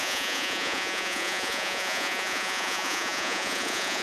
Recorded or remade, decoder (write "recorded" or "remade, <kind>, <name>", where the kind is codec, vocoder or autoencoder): remade, vocoder, Vocos